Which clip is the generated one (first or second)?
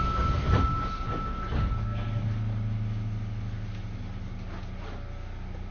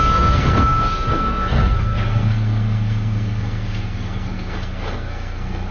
second